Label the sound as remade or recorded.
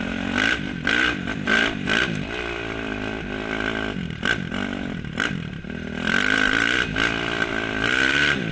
remade